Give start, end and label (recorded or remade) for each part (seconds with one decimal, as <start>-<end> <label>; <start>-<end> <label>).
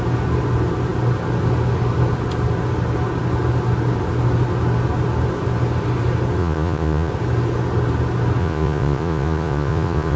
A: 0.0-6.4 recorded; 6.4-7.1 remade; 7.1-8.4 recorded; 8.4-10.2 remade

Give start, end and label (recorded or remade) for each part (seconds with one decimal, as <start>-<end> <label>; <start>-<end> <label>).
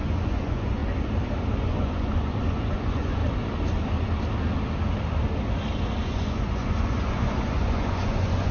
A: 0.0-0.8 remade; 0.8-1.6 recorded; 1.6-3.2 remade; 3.2-6.0 recorded; 6.0-8.5 remade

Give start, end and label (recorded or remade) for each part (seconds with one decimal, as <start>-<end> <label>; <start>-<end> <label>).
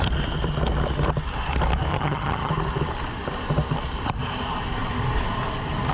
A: 0.0-1.9 recorded; 1.9-2.5 remade; 2.5-5.9 recorded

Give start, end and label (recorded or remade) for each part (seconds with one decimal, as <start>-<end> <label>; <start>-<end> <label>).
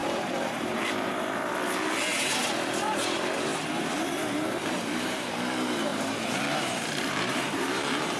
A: 0.0-1.5 remade; 1.5-2.0 recorded; 2.0-8.2 remade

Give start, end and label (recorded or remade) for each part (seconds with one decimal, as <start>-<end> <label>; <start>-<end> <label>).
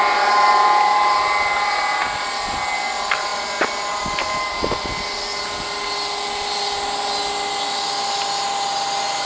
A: 0.0-9.2 recorded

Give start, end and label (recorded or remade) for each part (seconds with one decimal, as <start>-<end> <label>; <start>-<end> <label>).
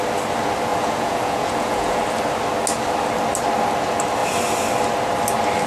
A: 0.0-0.7 recorded; 0.7-2.0 remade; 2.0-5.7 recorded